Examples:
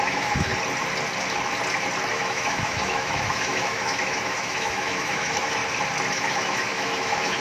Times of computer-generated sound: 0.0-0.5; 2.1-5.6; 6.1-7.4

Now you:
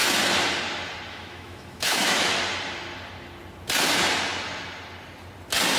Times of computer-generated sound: 1.1-2.3

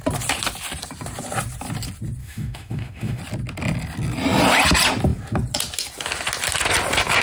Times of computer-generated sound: 2.2-3.2

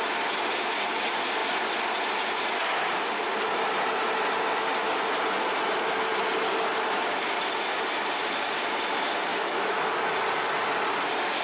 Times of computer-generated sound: 9.3-10.0